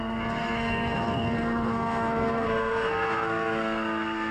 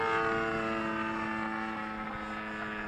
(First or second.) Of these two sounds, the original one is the second